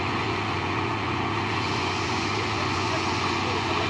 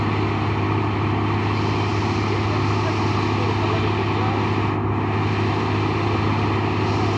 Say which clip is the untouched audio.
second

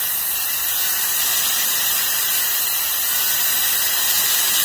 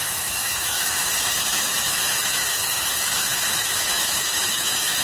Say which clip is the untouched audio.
first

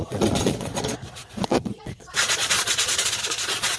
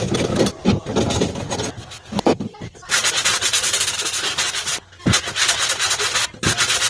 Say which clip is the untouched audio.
second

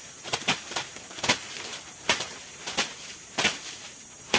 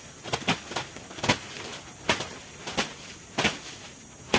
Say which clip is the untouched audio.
second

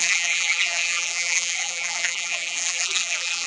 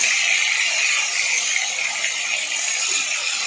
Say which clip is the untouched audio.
second